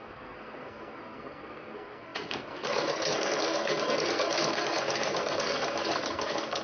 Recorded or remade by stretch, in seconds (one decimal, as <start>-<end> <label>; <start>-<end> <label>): 0.0-6.6 remade